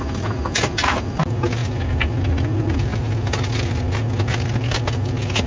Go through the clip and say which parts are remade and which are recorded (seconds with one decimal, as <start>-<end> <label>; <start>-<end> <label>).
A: 0.0-5.5 recorded